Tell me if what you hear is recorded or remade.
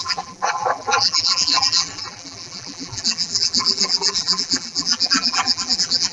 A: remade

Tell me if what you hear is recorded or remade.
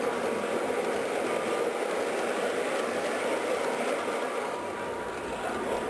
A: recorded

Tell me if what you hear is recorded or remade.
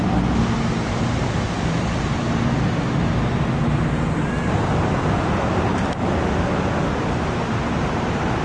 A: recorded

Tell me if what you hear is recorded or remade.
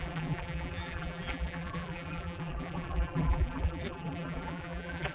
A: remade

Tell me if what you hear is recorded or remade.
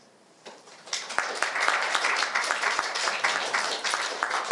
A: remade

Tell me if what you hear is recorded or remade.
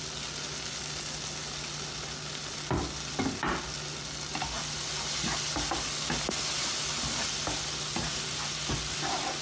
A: recorded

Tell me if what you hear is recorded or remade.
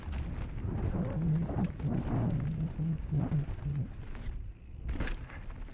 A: recorded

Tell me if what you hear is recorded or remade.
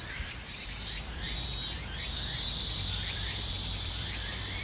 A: remade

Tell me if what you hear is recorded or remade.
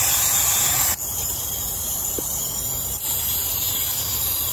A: remade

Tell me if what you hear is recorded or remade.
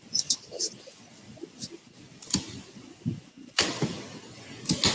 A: recorded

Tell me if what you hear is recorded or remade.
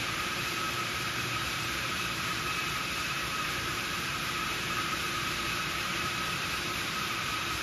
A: remade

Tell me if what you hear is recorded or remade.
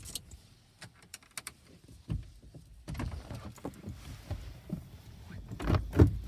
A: recorded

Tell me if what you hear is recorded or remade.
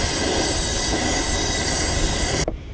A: recorded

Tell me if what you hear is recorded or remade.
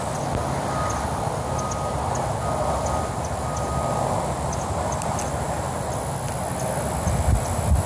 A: recorded